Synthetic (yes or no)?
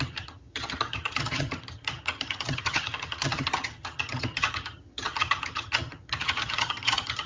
yes